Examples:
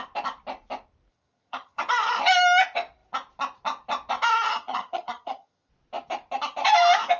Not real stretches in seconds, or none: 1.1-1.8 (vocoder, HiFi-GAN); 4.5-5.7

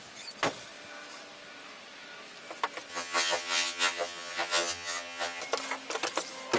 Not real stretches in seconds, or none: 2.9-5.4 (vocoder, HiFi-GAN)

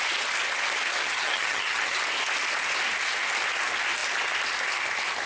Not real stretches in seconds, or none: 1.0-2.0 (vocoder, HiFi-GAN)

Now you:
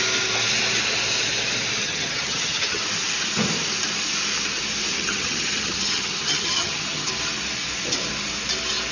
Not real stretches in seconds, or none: 1.8-2.8 (vocoder, HiFi-GAN); 4.9-7.1

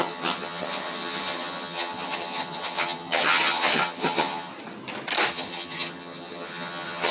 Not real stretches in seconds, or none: 0.0-4.5 (vocoder, HiFi-GAN); 5.3-7.1

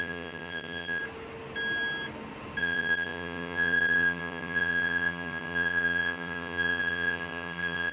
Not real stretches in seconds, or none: 0.0-1.0 (vocoder, HiFi-GAN); 2.6-7.9

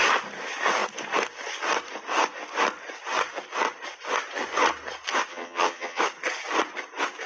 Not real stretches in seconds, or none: 5.3-6.0 (vocoder, HiFi-GAN)

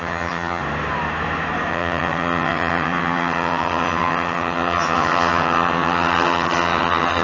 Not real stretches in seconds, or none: 0.0-0.6 (vocoder, HiFi-GAN); 1.7-7.2